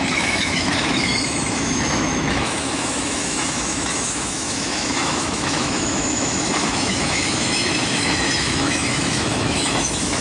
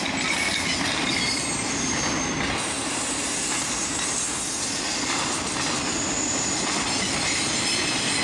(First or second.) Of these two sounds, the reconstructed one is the first